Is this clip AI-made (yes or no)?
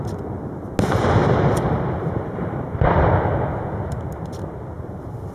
no